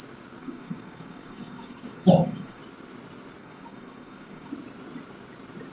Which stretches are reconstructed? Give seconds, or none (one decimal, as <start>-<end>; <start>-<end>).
0.4-2.6; 3.4-4.5